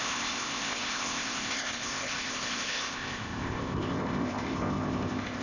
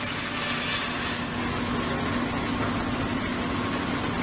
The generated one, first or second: first